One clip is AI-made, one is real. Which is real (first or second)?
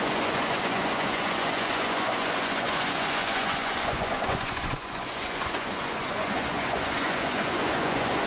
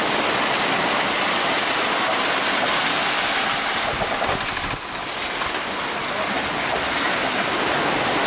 second